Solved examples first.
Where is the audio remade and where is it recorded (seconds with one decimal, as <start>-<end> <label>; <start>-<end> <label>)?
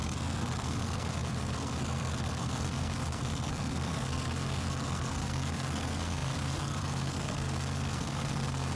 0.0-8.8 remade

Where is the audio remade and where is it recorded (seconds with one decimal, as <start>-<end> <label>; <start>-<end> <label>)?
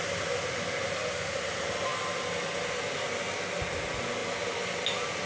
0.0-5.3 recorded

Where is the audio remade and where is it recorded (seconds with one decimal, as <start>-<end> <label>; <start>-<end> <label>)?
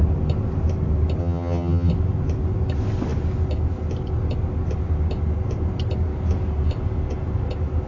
0.0-1.2 recorded; 1.2-1.9 remade; 1.9-7.9 recorded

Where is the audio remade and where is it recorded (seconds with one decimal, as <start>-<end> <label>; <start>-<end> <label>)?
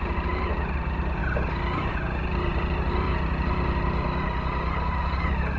0.0-5.6 recorded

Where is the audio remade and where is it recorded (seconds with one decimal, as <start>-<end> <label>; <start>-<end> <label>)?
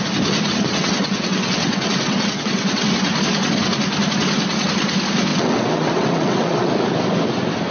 0.0-0.5 recorded; 0.5-2.8 remade; 2.8-5.3 recorded; 5.3-6.7 remade; 6.7-7.7 recorded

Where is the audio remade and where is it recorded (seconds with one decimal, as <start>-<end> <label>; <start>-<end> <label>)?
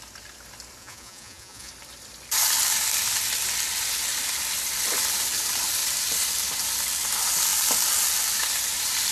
0.0-0.8 recorded; 0.8-1.7 remade; 1.7-9.1 recorded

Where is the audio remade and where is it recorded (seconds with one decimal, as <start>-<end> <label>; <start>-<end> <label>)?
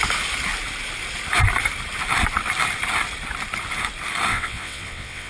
0.0-4.3 recorded; 4.3-5.3 remade